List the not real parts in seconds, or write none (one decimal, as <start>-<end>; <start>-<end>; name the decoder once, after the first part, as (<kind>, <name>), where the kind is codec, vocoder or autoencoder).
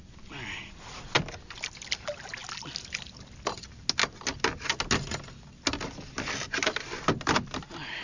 none